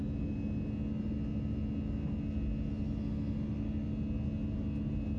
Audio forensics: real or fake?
real